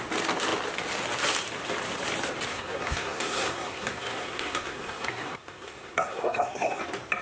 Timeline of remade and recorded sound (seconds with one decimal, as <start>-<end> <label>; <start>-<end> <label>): 0.0-2.5 recorded; 2.5-6.8 remade; 6.8-7.2 recorded